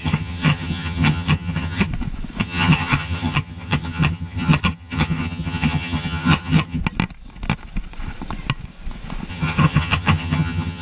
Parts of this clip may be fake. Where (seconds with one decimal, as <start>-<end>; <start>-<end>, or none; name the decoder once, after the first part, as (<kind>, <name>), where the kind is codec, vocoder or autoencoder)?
0.0-1.9 (vocoder, HiFi-GAN); 2.4-6.8; 9.3-10.8